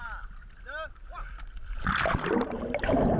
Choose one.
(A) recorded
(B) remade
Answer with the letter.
A